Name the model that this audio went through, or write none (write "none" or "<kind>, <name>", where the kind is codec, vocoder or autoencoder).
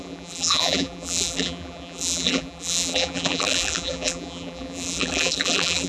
vocoder, BigVGAN v2